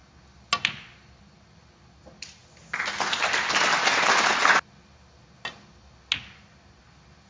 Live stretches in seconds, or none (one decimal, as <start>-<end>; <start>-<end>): 0.0-7.3